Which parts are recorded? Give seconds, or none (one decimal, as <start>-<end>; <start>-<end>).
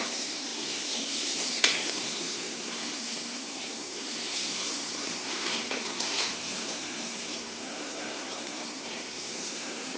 none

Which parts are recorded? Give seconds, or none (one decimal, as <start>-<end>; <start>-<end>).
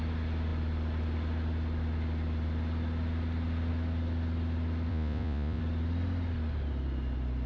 0.0-4.9; 5.6-7.5